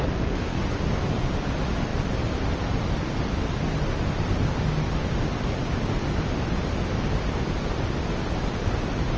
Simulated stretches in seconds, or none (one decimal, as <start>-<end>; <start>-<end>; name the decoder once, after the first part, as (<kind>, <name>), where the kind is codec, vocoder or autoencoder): none